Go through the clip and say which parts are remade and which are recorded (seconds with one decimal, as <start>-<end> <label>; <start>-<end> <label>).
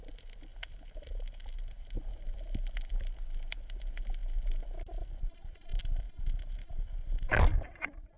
0.0-0.5 recorded; 0.5-2.1 remade; 2.1-5.7 recorded; 5.7-7.6 remade; 7.6-8.2 recorded